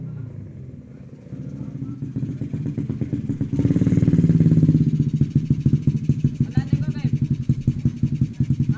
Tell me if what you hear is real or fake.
real